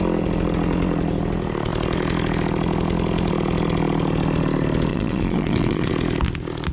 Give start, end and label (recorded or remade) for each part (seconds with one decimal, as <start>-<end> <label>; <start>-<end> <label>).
0.0-4.9 recorded; 4.9-5.9 remade; 5.9-6.7 recorded